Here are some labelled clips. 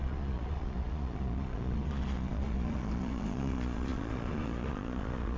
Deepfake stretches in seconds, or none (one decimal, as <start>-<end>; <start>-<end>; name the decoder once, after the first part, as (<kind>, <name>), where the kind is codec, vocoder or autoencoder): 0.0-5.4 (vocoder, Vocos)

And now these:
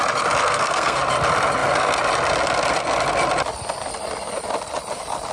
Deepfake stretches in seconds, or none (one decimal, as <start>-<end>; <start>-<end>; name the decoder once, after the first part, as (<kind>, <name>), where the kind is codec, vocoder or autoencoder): 0.4-1.0 (codec, SNAC)

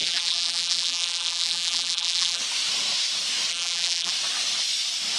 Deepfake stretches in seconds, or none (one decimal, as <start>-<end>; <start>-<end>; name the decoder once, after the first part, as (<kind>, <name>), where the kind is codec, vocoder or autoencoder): 0.0-2.4 (vocoder, BigVGAN v2); 3.5-4.1

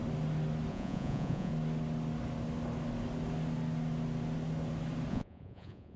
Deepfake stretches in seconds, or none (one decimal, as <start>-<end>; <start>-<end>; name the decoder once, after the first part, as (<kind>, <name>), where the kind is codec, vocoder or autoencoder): 0.7-1.5 (vocoder, Vocos); 5.1-6.0

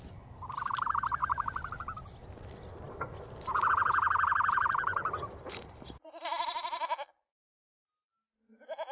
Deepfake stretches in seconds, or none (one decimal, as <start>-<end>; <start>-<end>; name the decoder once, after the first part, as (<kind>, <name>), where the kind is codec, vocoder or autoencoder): 4.9-6.8 (vocoder, BigVGAN v2)

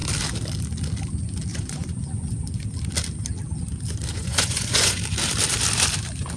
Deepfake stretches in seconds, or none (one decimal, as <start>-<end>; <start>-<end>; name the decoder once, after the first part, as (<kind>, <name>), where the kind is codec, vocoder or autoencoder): 1.5-2.3 (vocoder, Vocos); 4.1-5.0

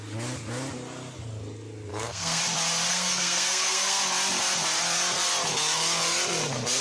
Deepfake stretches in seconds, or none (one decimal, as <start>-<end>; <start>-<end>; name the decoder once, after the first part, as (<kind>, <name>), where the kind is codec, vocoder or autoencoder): 1.9-2.4 (codec, SNAC); 2.9-4.0